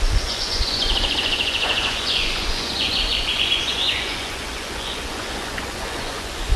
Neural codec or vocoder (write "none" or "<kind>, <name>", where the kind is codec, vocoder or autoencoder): vocoder, Vocos